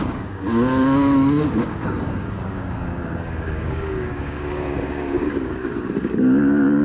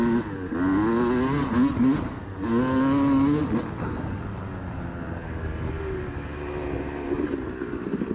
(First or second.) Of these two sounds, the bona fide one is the second